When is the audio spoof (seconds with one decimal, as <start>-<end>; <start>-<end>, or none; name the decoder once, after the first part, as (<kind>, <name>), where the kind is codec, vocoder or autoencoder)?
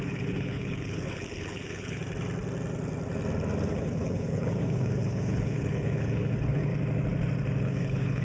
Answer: 0.0-2.0 (codec, HILCodec); 3.7-6.7; 7.6-8.2